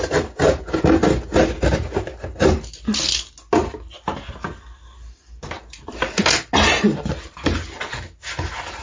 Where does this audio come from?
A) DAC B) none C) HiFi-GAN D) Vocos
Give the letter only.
B